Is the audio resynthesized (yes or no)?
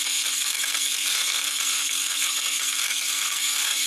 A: yes